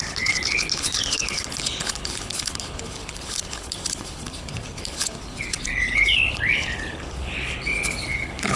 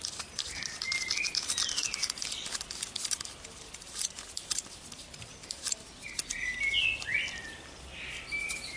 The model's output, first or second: first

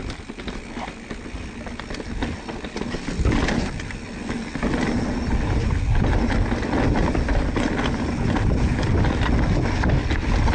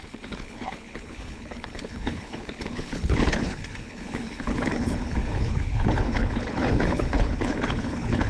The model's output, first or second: second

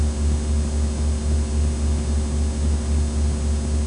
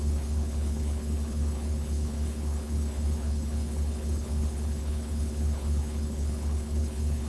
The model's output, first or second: second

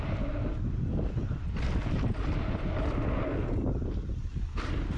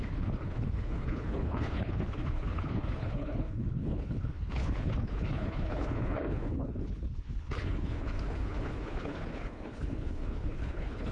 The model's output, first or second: second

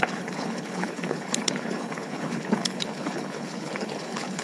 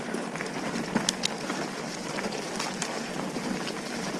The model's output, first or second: first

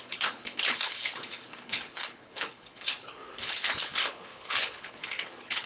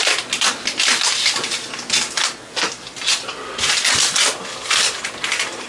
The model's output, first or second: first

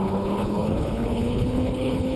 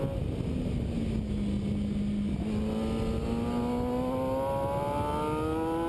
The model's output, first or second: first